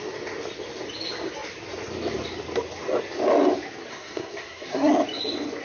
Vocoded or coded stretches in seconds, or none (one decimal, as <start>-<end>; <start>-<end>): 3.9-4.9